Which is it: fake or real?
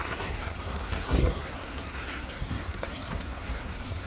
fake